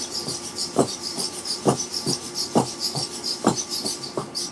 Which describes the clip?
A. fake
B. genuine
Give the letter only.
A